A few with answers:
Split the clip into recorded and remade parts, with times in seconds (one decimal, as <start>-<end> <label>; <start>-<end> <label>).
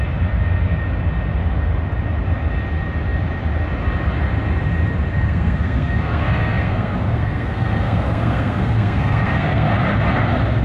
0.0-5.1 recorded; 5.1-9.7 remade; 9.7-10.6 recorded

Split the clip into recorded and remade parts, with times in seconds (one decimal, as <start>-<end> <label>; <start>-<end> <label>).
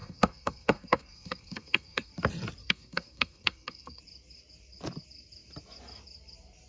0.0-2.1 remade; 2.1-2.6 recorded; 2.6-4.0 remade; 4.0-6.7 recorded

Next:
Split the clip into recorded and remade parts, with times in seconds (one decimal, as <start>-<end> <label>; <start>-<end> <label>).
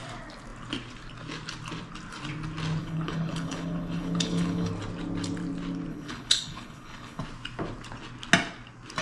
0.0-2.8 recorded; 2.8-4.7 remade; 4.7-5.9 recorded; 5.9-7.2 remade; 7.2-9.0 recorded